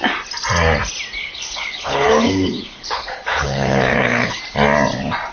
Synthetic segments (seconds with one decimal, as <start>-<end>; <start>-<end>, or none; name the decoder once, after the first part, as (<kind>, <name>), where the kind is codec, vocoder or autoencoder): 1.2-4.4 (codec, HILCodec)